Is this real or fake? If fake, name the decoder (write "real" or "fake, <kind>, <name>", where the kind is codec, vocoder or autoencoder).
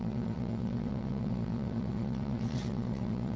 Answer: fake, vocoder, WaveNeXt